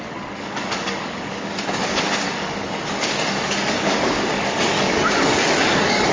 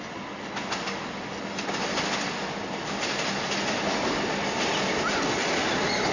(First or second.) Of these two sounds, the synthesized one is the first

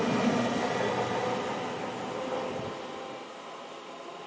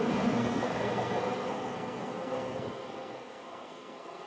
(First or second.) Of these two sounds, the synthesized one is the second